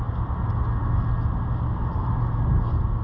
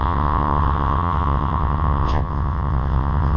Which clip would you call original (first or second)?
first